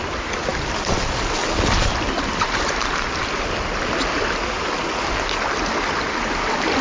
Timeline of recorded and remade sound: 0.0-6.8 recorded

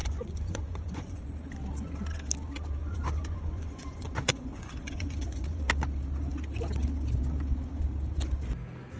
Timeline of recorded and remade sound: 0.0-1.2 remade; 1.2-2.8 recorded; 2.8-5.7 remade; 5.7-9.0 recorded